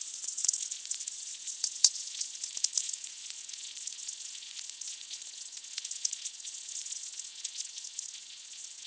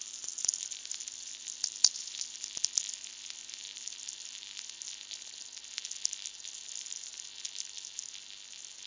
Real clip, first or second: second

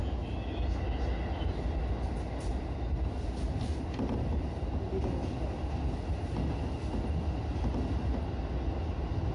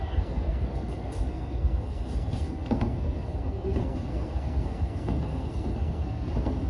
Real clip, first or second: first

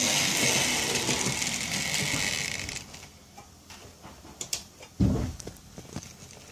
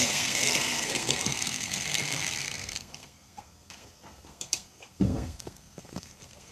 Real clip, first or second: first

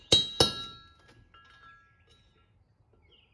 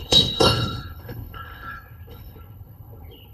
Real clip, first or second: first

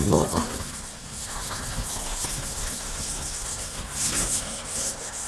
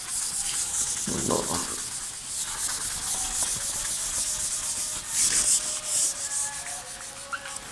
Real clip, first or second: second